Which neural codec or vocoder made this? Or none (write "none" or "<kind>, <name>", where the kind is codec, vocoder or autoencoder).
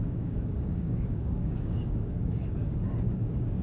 codec, DAC